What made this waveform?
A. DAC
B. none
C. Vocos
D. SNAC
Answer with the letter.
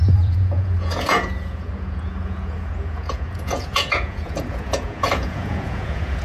C